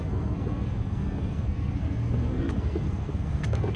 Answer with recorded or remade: remade